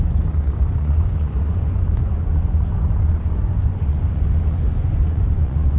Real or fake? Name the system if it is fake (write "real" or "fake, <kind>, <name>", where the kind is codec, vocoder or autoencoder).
fake, vocoder, Vocos